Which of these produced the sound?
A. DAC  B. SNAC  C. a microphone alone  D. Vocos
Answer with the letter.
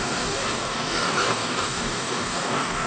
A